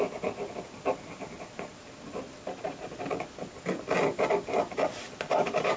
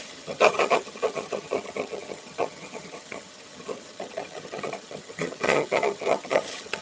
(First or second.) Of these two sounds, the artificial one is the second